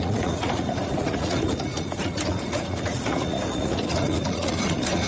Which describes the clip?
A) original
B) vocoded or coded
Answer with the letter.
B